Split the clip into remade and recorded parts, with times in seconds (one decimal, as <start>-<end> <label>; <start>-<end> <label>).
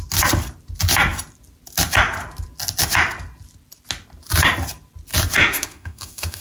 0.0-5.4 recorded; 5.4-6.4 remade